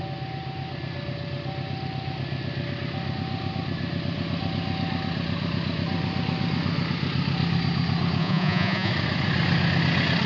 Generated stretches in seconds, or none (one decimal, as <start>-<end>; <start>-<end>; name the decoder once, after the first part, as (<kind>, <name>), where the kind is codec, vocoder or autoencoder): 8.2-8.9 (vocoder, Vocos)